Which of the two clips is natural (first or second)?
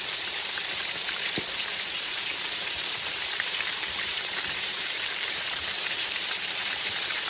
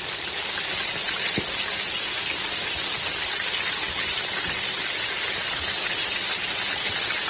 second